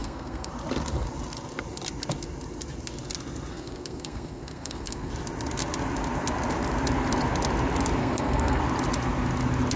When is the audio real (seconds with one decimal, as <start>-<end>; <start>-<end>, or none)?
0.5-3.5; 5.1-8.0; 8.6-9.8